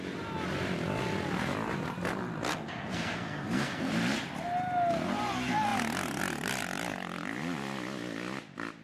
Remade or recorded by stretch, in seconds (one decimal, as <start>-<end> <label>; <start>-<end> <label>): 0.0-2.5 recorded; 2.5-3.9 remade; 3.9-8.8 recorded